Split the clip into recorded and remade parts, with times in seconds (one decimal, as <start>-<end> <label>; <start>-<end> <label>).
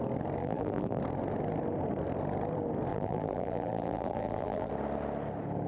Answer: 0.0-0.4 recorded; 0.4-1.0 remade; 1.0-2.9 recorded; 2.9-4.7 remade; 4.7-5.7 recorded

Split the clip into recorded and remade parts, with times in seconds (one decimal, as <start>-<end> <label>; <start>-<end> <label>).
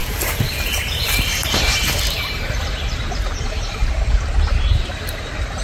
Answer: 0.0-3.8 remade; 3.8-4.7 recorded; 4.7-5.6 remade